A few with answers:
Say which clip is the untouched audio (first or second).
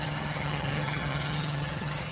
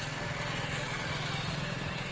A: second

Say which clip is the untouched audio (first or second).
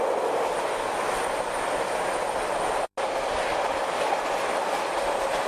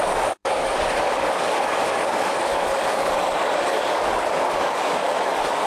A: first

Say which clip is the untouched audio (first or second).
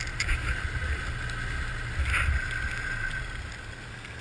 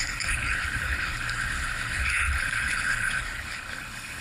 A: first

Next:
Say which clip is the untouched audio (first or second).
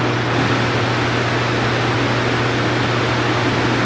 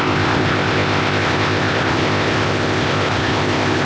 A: first